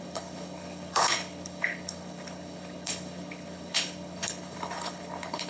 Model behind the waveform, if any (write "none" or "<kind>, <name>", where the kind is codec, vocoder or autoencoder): codec, HILCodec